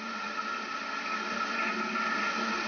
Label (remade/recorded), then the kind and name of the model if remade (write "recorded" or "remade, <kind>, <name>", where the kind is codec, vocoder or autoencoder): recorded